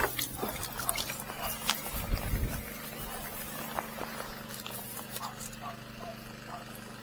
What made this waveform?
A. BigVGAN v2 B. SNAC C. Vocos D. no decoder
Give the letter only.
D